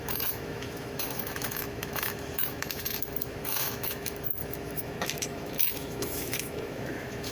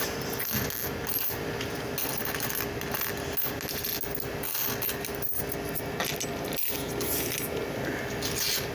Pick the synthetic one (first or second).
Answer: first